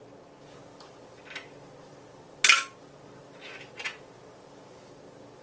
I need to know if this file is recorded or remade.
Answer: recorded